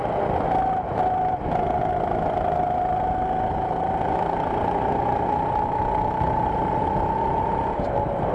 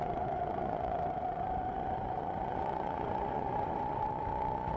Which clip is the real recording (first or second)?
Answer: first